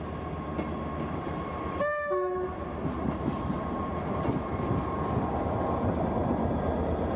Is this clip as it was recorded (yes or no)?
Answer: yes